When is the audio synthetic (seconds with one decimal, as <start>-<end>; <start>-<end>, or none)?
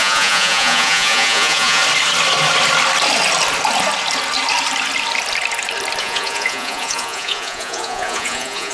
0.0-1.8; 6.0-8.7